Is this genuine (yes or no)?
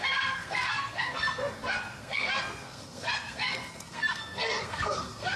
no